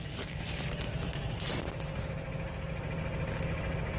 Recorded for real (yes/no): yes